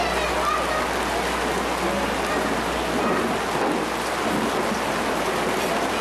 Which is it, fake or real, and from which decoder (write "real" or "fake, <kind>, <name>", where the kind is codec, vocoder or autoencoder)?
real